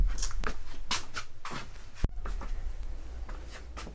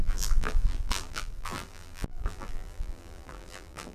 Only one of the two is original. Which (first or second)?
first